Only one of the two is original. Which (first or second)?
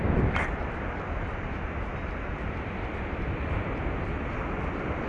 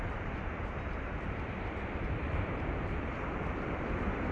first